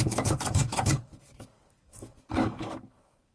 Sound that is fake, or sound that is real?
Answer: fake